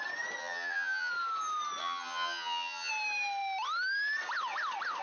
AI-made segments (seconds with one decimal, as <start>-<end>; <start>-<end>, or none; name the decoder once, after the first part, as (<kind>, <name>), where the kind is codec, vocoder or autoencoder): 0.4-1.1 (vocoder, HiFi-GAN); 1.8-2.9

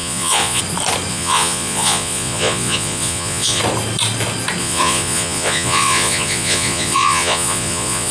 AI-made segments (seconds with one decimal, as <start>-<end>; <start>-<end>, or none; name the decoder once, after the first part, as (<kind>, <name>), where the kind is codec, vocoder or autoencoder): 0.0-0.6 (vocoder, Vocos); 1.1-3.6; 4.6-8.1

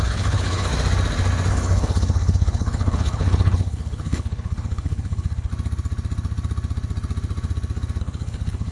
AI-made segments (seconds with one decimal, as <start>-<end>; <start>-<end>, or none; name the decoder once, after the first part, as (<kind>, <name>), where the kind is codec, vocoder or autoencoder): 0.0-0.7 (codec, HILCodec); 1.5-5.5; 8.0-8.7

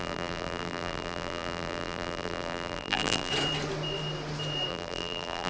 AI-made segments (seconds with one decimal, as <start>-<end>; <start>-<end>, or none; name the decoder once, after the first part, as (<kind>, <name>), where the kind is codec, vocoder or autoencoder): 0.0-3.3 (vocoder, BigVGAN v2); 4.7-5.5

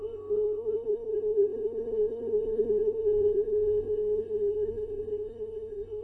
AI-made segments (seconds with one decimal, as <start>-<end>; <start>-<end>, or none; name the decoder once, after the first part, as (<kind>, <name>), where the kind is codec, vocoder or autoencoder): 0.0-6.0 (codec, SNAC)

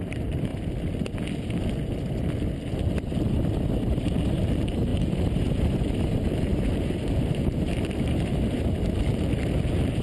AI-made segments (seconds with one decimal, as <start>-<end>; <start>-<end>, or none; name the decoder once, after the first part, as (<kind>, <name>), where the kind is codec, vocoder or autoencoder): 0.0-0.5 (vocoder, BigVGAN v2); 3.8-10.0

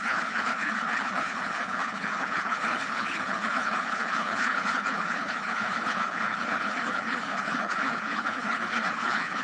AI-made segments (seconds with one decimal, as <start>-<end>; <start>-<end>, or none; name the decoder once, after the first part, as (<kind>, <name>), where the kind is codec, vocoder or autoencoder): 0.0-9.4 (codec, HILCodec)